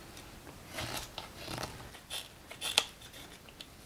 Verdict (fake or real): real